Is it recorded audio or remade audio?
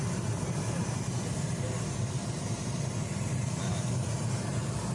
recorded